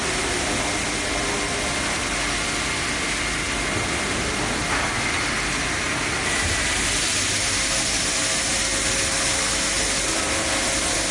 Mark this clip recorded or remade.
recorded